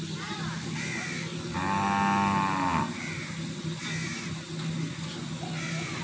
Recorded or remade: recorded